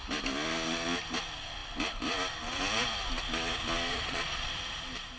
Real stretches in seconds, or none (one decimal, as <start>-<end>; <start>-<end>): 0.0-3.9; 4.5-5.2